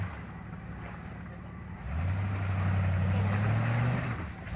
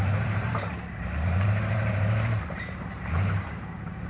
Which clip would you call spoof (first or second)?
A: second